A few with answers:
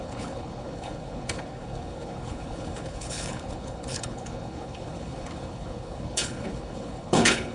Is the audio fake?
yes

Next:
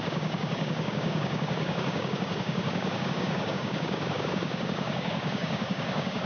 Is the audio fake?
yes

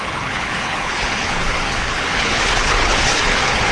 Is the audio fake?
yes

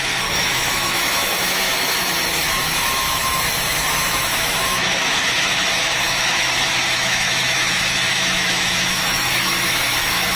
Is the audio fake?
yes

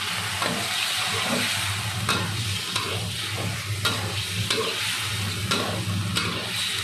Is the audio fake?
no